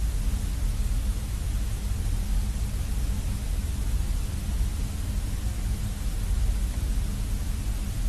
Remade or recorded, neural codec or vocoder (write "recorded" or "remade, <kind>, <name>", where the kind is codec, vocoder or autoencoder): recorded